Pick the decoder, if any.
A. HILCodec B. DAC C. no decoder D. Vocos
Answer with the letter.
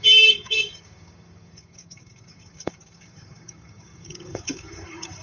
B